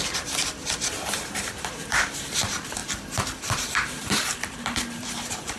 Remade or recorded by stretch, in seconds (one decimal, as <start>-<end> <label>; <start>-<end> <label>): 0.0-2.8 remade; 2.8-3.4 recorded; 3.4-5.6 remade